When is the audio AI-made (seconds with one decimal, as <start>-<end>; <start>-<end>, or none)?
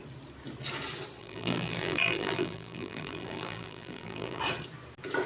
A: 1.2-4.4